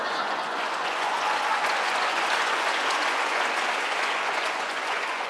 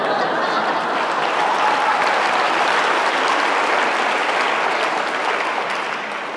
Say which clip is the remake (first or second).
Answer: first